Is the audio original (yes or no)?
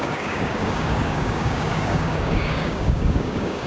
no